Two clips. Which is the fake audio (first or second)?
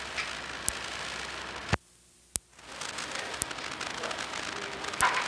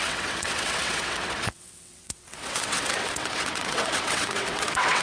second